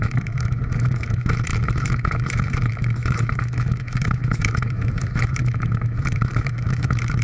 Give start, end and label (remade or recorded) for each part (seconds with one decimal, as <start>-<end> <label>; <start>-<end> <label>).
0.0-7.2 remade